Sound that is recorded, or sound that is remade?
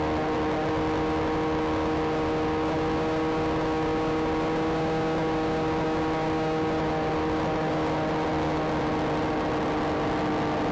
recorded